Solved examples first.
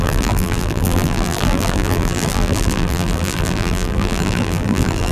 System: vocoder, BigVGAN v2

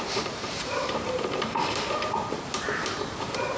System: vocoder, BigVGAN v2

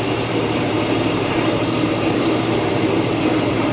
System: vocoder, BigVGAN v2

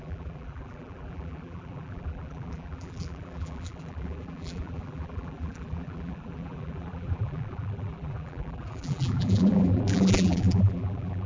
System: vocoder, BigVGAN v2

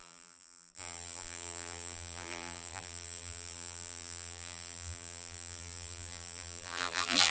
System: vocoder, BigVGAN v2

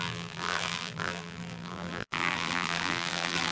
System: vocoder, BigVGAN v2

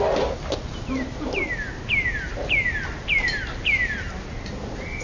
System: none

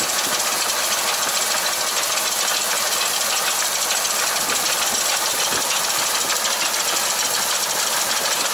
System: none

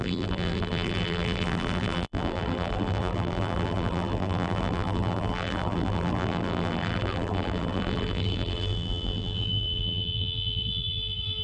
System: vocoder, BigVGAN v2